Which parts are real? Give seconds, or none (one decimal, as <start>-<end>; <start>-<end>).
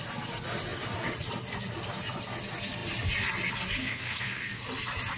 0.0-3.8; 4.6-5.2